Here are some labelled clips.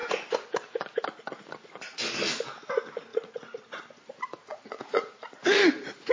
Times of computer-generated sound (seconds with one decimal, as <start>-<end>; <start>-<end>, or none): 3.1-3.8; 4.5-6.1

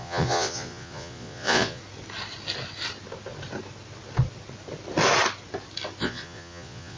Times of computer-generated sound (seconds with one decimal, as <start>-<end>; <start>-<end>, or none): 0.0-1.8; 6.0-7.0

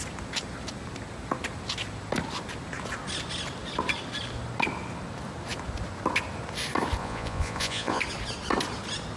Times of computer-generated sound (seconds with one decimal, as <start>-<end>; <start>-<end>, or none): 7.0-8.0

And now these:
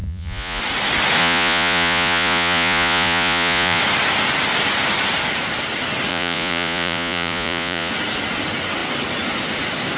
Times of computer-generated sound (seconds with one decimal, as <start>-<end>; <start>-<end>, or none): 0.0-0.6; 1.2-3.8; 6.1-7.9

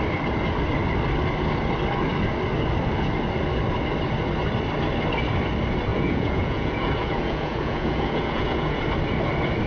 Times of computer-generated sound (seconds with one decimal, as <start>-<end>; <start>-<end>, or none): 5.9-8.8

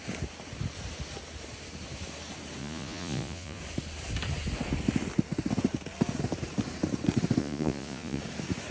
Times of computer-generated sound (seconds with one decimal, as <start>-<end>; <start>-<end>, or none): 2.6-3.6; 7.4-8.2

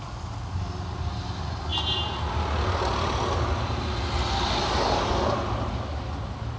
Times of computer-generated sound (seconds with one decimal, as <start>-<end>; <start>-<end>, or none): none